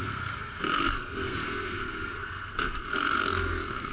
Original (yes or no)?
no